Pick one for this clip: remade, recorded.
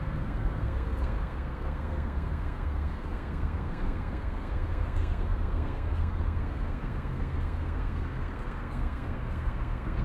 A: remade